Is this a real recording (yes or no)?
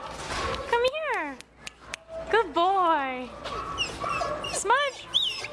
yes